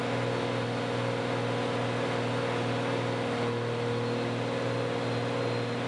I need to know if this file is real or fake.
real